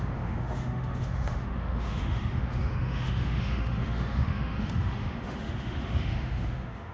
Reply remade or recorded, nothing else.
remade